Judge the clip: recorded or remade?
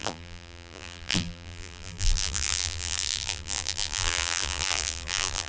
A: remade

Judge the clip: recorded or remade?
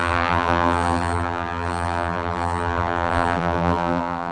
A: remade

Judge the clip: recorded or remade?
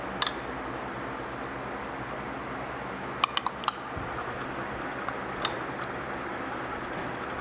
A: recorded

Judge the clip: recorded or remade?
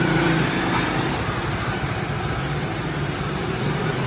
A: remade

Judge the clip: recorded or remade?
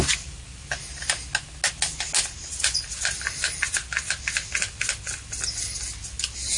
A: recorded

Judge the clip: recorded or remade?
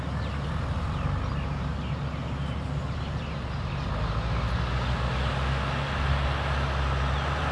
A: recorded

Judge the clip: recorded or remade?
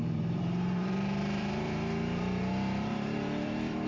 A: remade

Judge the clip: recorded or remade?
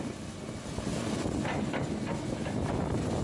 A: remade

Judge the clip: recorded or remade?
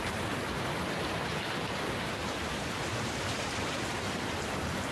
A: remade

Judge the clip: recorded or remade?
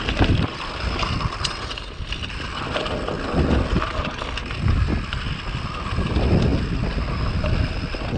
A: recorded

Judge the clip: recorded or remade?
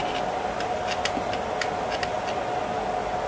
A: recorded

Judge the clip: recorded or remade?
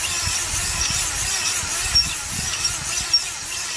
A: recorded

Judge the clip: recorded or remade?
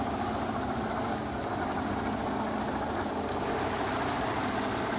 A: recorded